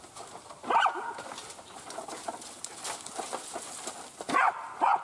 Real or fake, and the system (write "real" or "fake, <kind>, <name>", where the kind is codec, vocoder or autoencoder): real